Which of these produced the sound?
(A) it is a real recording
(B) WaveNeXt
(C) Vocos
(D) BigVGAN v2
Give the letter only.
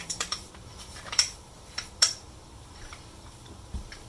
D